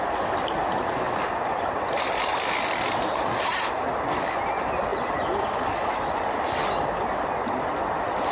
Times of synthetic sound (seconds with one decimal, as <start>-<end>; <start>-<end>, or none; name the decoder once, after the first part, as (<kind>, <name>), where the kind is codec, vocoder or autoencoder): none